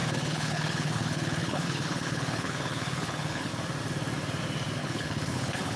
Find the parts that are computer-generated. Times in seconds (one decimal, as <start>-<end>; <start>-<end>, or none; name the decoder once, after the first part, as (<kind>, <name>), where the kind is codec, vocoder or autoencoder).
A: 0.0-3.5 (codec, HILCodec); 4.8-5.8